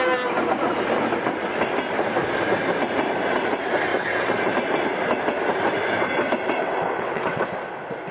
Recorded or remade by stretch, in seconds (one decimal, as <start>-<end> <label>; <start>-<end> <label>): 0.0-3.9 recorded; 3.9-4.5 remade; 4.5-6.6 recorded; 6.6-7.4 remade; 7.4-8.1 recorded